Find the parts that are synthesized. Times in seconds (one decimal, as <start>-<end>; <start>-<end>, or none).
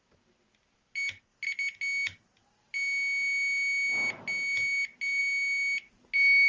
none